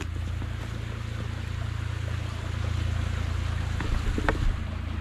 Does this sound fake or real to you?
real